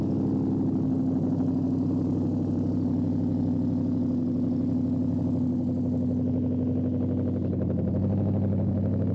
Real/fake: real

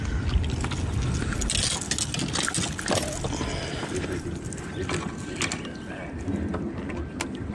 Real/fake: real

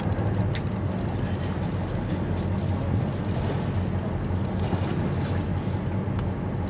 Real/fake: real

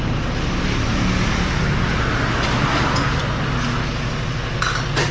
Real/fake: real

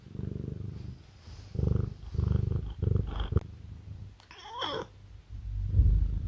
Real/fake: real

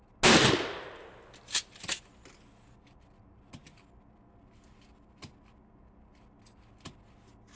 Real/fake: real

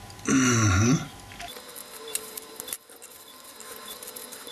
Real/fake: real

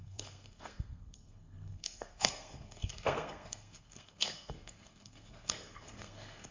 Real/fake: fake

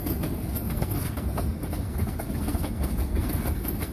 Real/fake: fake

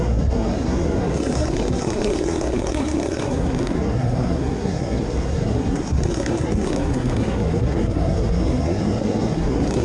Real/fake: fake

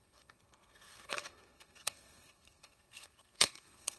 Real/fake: fake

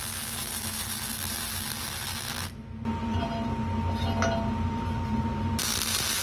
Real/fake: real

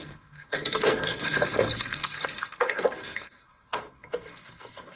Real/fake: fake